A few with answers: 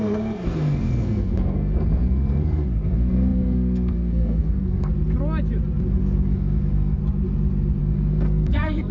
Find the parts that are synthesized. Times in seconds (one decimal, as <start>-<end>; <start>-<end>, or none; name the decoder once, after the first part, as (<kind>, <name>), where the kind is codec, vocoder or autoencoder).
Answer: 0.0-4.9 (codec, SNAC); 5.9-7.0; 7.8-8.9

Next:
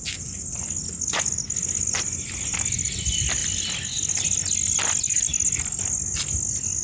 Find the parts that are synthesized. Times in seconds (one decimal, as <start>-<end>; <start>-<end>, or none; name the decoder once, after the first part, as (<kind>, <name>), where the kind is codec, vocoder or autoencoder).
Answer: none

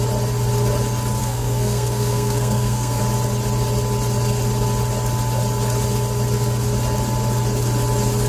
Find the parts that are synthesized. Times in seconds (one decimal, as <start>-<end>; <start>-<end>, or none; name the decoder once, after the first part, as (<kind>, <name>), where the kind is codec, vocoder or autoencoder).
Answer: 1.2-3.0 (codec, SNAC)

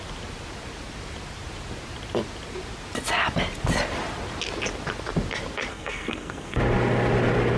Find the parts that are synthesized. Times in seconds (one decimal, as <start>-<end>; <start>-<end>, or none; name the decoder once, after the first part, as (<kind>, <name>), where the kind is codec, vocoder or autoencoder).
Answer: 5.7-6.6 (codec, SNAC)